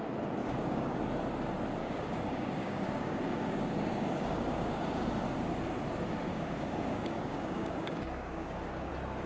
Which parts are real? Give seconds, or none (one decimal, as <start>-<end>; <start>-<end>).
0.0-0.4; 1.0-1.8; 5.1-6.3; 8.9-9.3